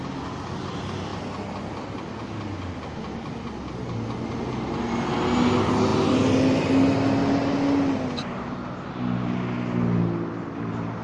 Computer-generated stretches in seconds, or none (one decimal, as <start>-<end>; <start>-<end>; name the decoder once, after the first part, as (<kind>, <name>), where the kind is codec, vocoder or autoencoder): none